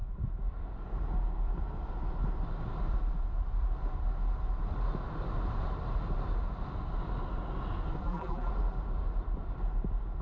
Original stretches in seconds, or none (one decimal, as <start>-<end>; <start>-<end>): 0.0-8.0; 8.5-10.2